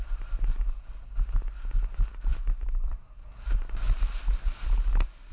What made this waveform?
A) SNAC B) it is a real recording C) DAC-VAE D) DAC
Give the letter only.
B